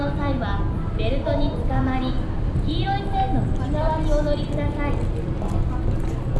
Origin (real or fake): real